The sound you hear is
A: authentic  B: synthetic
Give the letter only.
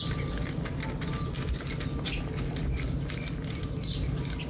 A